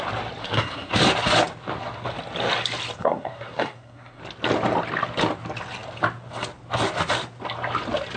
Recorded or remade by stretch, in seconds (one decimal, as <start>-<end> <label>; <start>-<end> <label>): 0.0-0.4 recorded; 0.4-0.9 remade; 0.9-3.0 recorded; 3.0-4.2 remade; 4.2-8.2 recorded